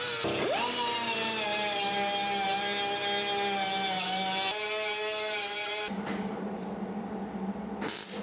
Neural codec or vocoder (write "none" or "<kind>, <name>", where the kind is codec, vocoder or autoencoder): none